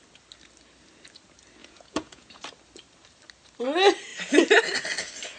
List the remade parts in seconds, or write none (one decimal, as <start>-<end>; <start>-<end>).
1.6-2.5